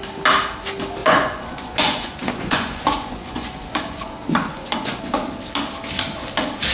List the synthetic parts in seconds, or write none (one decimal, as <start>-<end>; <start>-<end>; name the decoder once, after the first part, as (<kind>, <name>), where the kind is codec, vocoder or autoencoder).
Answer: 1.0-5.0 (vocoder, Vocos)